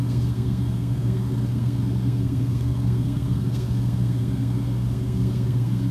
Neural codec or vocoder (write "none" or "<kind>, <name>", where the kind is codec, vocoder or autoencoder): codec, SNAC